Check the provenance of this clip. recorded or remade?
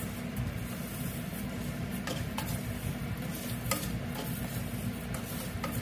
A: recorded